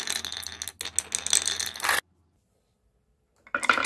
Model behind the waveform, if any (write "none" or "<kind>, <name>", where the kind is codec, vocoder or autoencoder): none